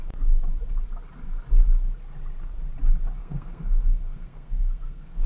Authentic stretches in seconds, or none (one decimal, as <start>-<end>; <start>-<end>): 0.0-3.2